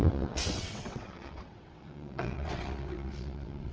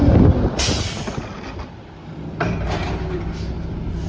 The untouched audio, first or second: second